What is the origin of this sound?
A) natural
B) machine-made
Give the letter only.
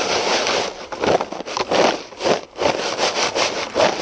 A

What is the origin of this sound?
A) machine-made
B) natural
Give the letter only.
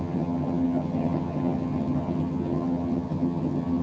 A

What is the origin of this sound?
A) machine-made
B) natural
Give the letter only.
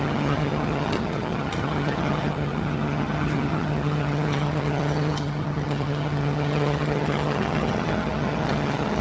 A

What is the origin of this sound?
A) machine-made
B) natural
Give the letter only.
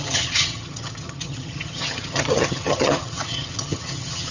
A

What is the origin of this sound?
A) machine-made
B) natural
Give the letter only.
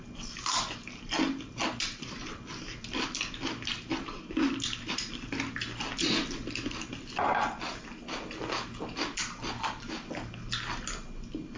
B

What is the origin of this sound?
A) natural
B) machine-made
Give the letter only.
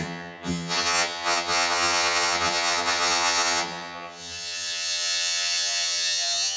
B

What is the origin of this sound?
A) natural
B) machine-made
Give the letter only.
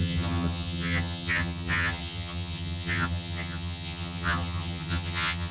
B